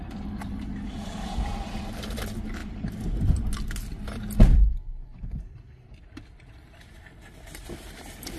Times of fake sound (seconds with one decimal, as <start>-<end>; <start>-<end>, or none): none